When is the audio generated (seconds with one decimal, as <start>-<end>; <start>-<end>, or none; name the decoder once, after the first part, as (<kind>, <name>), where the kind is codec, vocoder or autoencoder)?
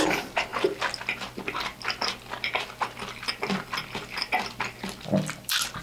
none